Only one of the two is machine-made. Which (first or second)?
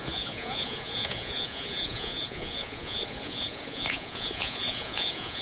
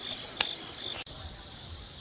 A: first